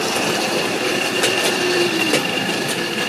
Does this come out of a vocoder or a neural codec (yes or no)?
yes